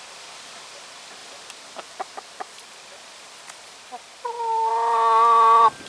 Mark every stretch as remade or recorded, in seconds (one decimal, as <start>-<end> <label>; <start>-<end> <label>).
0.0-5.9 recorded

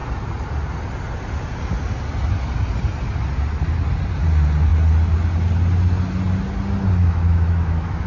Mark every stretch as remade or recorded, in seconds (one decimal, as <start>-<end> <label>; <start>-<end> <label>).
0.0-7.0 recorded; 7.0-8.1 remade

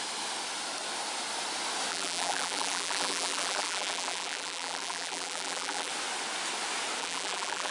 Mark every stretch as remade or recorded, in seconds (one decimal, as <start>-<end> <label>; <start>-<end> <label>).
0.0-1.9 recorded; 1.9-5.9 remade; 5.9-7.0 recorded; 7.0-7.7 remade

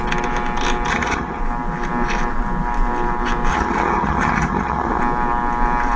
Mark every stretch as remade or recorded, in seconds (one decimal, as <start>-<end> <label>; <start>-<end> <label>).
0.0-0.9 recorded; 0.9-1.4 remade; 1.4-3.5 recorded; 3.5-5.0 remade; 5.0-6.0 recorded

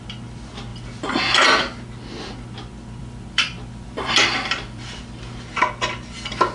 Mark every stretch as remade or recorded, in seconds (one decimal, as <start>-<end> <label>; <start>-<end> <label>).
0.0-3.0 recorded; 3.0-5.0 remade; 5.0-6.5 recorded

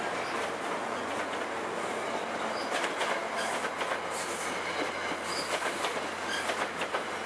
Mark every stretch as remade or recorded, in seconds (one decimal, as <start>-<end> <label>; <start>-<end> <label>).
0.0-0.8 recorded; 0.8-1.4 remade; 1.4-7.3 recorded

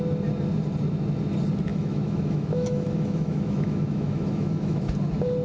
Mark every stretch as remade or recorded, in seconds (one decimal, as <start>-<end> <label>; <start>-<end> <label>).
0.0-1.7 recorded; 1.7-4.9 remade; 4.9-5.4 recorded